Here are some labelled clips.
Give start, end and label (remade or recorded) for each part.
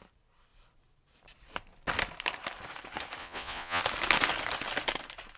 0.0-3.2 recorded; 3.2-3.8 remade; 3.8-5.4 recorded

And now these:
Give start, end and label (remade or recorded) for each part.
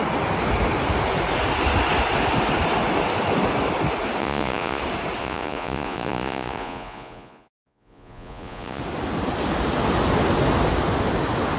0.0-4.2 recorded; 4.2-4.8 remade; 4.8-5.2 recorded; 5.2-8.8 remade; 8.8-11.6 recorded